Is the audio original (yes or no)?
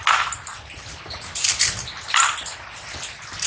yes